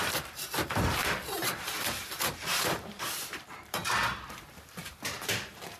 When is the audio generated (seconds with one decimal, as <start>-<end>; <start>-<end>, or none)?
1.0-3.9; 4.8-5.8